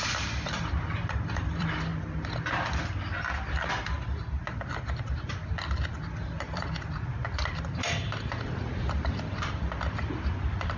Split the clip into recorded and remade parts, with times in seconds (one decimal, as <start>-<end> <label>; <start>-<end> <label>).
0.0-1.9 remade; 1.9-4.5 recorded; 4.5-10.8 remade